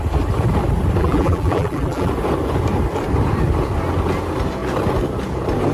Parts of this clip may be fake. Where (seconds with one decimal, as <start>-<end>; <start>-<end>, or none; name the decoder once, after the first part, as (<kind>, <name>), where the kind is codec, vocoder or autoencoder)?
1.0-2.1 (vocoder, BigVGAN v2)